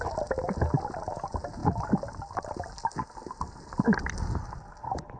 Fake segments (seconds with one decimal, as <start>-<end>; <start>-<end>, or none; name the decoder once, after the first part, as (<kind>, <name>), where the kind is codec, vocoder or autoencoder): none